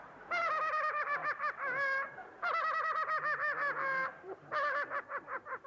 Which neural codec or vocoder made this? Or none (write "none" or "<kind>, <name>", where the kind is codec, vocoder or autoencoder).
vocoder, BigVGAN v2